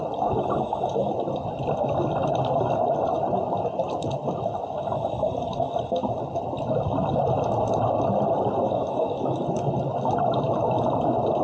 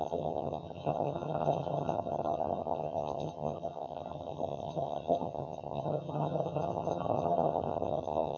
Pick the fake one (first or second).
second